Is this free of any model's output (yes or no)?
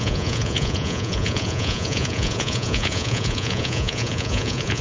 no